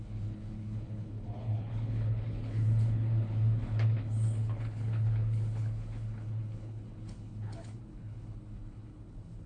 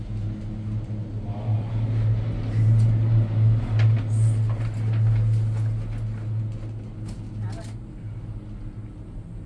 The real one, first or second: second